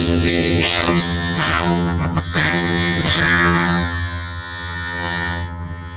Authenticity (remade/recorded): remade